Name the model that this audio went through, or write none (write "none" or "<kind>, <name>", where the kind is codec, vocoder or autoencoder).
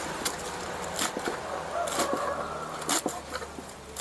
none